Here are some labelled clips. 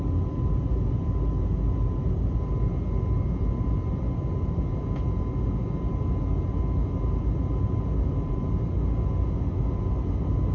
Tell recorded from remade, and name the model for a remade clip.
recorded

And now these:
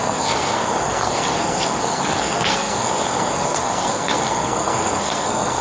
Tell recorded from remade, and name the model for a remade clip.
remade, codec, SNAC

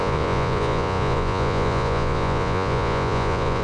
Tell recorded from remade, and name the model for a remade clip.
remade, vocoder, Vocos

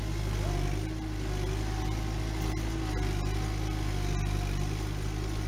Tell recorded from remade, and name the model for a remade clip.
recorded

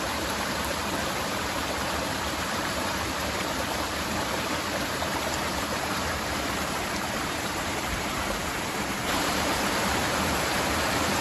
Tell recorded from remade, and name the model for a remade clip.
remade, vocoder, BigVGAN v2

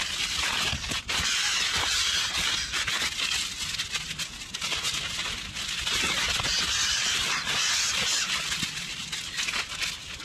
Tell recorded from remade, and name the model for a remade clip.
recorded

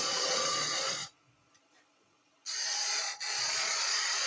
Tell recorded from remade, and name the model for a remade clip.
remade, vocoder, Vocos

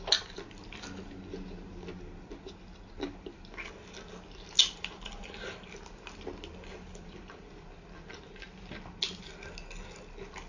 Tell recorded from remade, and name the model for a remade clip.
recorded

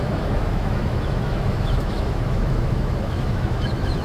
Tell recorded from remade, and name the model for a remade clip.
remade, autoencoder, DAC-VAE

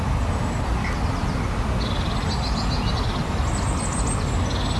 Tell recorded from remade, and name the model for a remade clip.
recorded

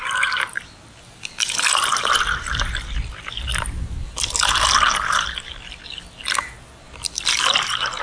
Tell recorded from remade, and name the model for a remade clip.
remade, vocoder, BigVGAN v2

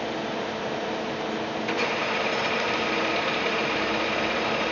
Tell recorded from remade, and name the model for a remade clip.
remade, vocoder, BigVGAN v2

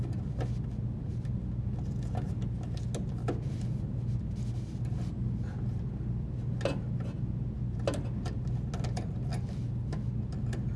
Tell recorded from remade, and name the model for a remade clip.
recorded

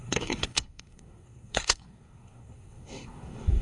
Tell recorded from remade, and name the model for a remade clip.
remade, codec, SNAC